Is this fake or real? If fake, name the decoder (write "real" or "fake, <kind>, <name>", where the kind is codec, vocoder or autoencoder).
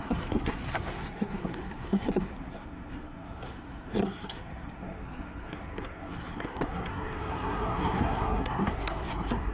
fake, codec, SNAC